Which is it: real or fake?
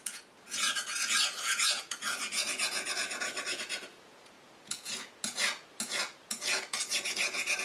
fake